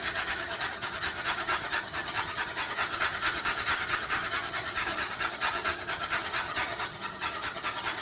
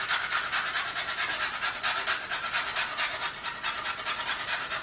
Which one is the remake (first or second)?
first